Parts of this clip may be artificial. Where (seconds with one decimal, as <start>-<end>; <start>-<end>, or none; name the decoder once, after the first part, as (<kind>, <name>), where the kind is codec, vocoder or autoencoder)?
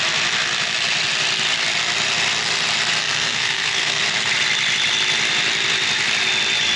3.0-4.0 (codec, SNAC)